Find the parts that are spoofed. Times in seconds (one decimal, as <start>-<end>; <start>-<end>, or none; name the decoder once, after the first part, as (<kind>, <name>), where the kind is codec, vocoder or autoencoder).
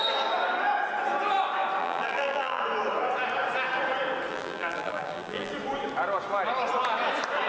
1.8-2.6 (vocoder, BigVGAN v2); 4.3-5.5